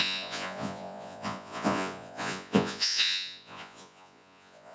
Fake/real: fake